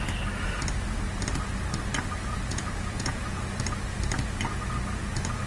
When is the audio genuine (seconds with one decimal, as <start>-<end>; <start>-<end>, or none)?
0.0-2.5; 3.2-5.5